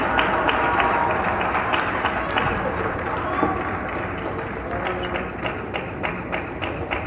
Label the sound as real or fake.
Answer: real